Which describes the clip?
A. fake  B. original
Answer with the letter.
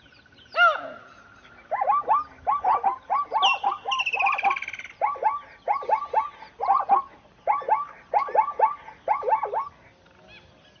B